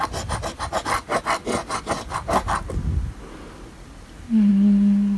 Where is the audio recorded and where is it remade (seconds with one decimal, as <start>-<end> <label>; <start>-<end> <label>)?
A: 0.0-5.2 recorded